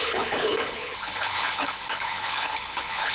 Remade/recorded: remade